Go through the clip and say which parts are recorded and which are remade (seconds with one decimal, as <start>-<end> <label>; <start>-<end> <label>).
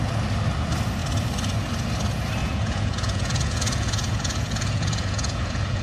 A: 0.0-2.4 recorded; 2.4-5.8 remade